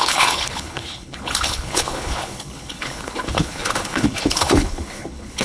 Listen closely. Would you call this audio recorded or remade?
remade